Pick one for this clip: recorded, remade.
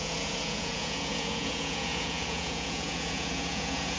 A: remade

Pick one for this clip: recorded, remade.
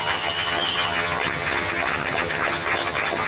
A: remade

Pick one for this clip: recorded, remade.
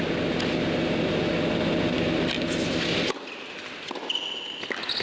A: recorded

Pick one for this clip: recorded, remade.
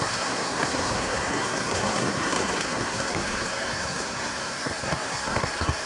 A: remade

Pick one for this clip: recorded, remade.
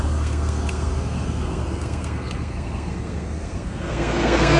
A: remade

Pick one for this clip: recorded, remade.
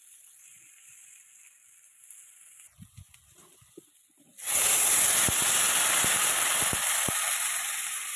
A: recorded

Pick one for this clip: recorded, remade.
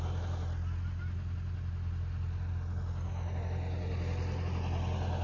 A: recorded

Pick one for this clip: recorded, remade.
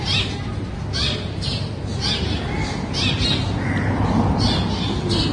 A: recorded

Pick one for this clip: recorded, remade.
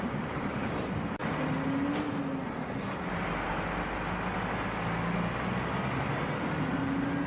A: recorded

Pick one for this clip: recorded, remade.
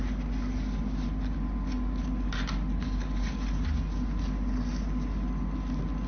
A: recorded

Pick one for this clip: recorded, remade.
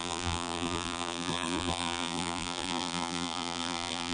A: remade